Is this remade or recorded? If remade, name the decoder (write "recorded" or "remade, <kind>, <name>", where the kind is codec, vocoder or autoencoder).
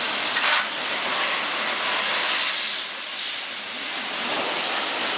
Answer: recorded